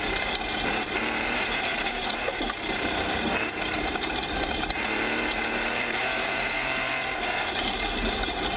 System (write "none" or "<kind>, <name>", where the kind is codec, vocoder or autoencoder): vocoder, BigVGAN v2